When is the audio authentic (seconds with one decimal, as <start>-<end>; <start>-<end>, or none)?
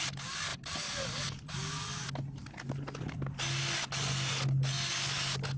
0.0-5.6